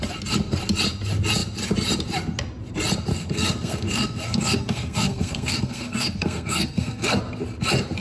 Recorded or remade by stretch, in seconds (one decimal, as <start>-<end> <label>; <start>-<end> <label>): 0.0-3.1 recorded; 3.1-7.2 remade; 7.2-8.0 recorded